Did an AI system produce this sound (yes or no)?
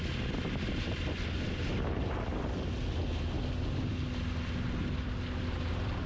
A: no